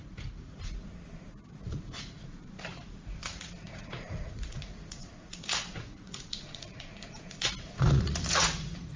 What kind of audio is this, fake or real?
fake